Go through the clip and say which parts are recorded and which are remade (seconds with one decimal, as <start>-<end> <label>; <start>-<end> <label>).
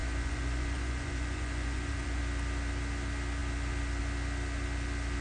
0.0-2.2 remade; 2.2-5.2 recorded